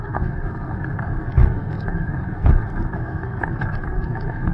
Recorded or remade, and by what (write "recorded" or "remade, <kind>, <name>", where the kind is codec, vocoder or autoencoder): remade, codec, SNAC